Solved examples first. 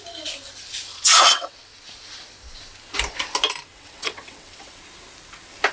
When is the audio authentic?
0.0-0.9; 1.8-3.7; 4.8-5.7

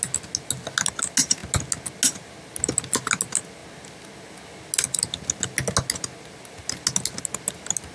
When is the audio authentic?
0.0-7.9